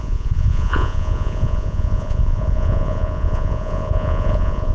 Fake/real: fake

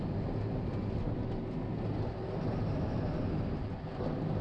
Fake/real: real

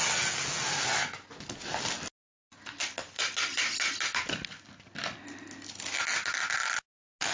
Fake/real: real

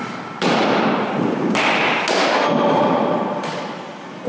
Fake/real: real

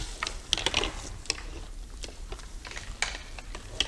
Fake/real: real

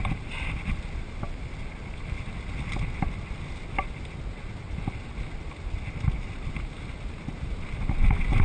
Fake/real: real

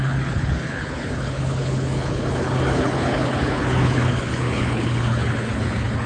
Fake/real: fake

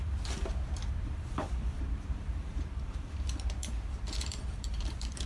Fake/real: fake